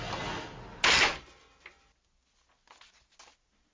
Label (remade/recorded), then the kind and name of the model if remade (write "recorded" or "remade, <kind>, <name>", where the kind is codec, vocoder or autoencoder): recorded